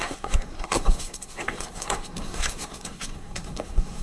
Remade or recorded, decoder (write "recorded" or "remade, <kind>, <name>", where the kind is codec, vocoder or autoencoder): remade, codec, SNAC